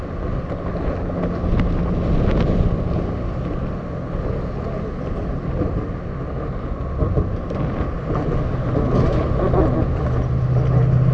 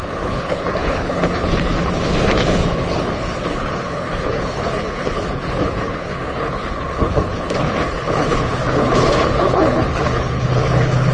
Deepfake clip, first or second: second